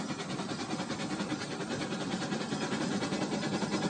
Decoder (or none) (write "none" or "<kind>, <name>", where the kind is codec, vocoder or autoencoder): none